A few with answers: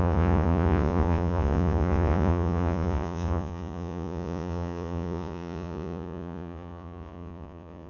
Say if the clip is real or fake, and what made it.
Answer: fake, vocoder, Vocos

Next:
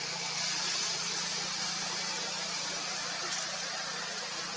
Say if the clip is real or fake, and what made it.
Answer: real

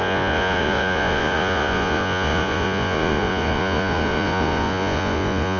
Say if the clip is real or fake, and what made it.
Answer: fake, vocoder, Vocos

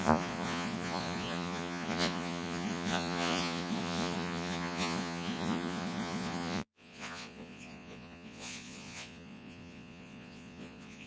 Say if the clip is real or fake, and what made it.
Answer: fake, vocoder, Vocos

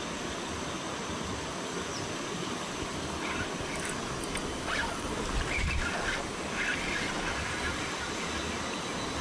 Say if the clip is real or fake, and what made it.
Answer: real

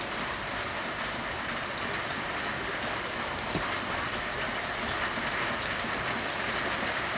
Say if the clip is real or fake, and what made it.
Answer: real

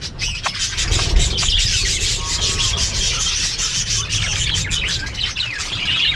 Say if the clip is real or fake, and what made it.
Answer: real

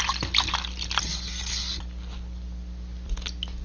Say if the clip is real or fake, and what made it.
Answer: real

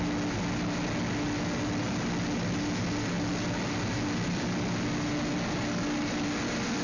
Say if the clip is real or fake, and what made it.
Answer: real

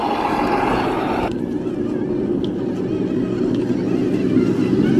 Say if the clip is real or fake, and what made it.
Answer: real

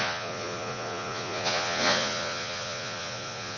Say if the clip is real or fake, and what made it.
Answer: fake, vocoder, Vocos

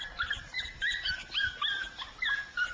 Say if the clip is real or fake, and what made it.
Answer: real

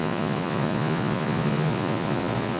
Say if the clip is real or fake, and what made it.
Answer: fake, vocoder, Vocos